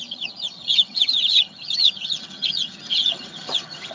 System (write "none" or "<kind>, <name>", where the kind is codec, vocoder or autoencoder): vocoder, HiFi-GAN